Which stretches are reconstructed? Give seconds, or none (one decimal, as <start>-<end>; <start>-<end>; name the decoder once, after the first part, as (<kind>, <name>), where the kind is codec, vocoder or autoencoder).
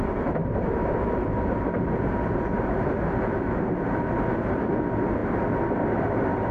none